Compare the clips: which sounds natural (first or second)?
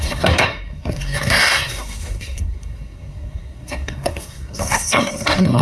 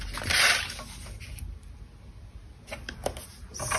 second